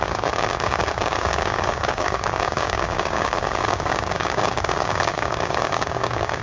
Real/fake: fake